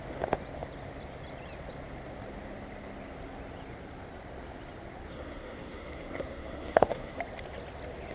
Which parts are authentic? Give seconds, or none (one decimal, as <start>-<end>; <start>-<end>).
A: 0.0-5.1; 7.2-8.1